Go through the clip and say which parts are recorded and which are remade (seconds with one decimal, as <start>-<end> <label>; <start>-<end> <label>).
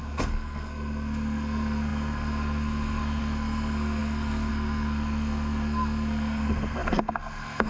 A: 0.0-7.7 remade